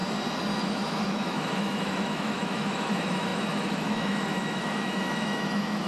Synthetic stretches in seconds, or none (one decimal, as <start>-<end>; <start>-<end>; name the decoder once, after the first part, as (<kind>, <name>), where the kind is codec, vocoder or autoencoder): 0.6-5.9 (autoencoder, DAC-VAE)